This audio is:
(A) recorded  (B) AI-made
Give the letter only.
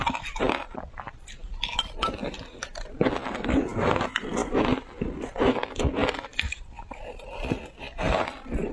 A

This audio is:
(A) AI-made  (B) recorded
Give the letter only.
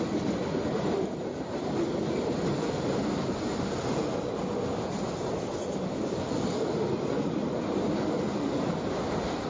B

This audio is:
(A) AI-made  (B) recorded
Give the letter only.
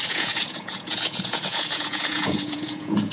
A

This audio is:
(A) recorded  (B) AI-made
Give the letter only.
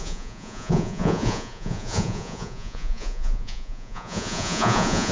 B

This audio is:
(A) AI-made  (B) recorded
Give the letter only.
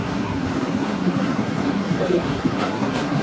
A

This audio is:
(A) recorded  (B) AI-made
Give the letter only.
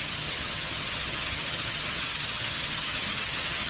B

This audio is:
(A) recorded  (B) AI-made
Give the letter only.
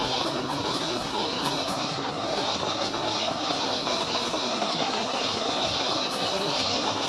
B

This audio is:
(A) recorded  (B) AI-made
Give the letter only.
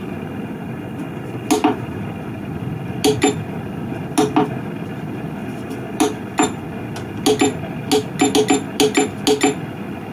A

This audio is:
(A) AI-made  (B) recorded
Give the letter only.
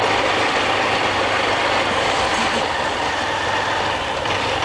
B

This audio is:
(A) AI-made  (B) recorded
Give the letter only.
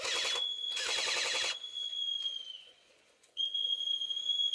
A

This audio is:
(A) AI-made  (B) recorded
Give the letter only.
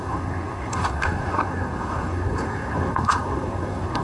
A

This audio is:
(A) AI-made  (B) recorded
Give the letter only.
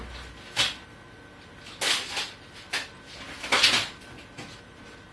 B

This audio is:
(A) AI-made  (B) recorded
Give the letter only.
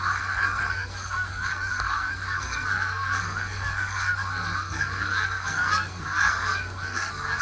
A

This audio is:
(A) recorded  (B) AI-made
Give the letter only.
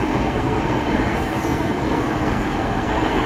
B